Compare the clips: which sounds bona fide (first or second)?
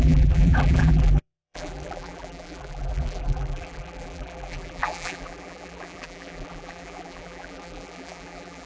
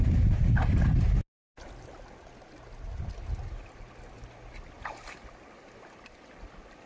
second